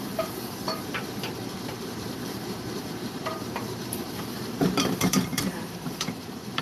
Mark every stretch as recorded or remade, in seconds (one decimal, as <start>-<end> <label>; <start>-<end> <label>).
0.0-6.6 remade